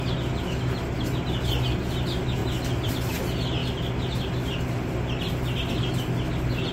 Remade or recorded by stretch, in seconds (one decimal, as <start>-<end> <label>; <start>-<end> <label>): 0.0-6.7 recorded